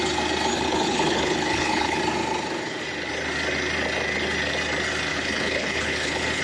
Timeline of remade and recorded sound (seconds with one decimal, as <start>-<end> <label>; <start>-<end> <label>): 0.0-0.5 recorded; 0.5-2.0 remade; 2.0-5.1 recorded; 5.1-6.4 remade